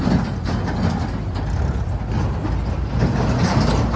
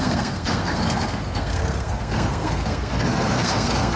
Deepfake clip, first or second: second